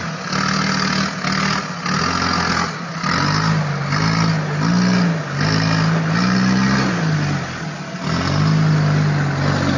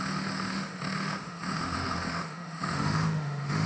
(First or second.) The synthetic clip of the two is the second